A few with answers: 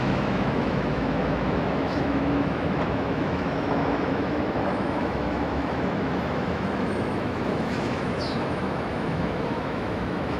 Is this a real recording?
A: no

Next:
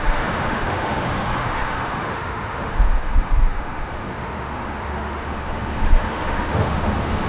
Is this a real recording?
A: no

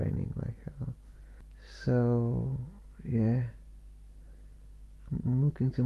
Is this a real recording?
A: yes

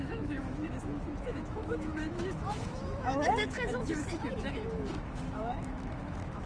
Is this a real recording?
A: no